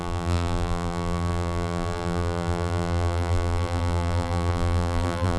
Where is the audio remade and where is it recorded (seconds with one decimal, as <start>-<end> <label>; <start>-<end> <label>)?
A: 0.0-5.4 remade